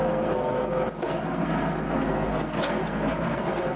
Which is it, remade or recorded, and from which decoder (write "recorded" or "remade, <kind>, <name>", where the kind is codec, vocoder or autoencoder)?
remade, codec, SNAC